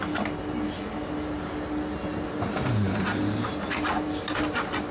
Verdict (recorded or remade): recorded